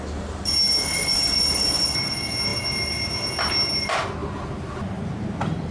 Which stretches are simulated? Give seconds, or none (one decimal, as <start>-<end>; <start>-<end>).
0.9-1.8; 4.2-5.0